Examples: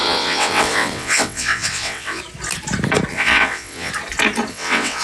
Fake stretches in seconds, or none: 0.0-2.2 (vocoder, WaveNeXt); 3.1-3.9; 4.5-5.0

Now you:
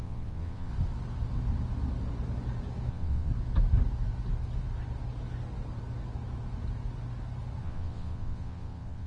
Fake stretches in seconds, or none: 0.0-0.7 (vocoder, WaveNeXt); 2.9-3.3; 7.6-9.1

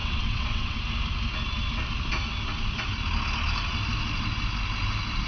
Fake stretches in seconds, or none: 0.0-0.8 (vocoder, WaveNeXt)

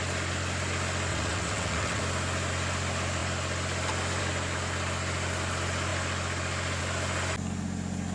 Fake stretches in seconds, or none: 1.1-2.0 (vocoder, WaveNeXt)

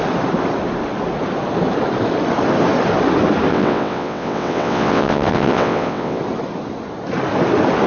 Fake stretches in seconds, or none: 3.5-6.2 (vocoder, WaveNeXt)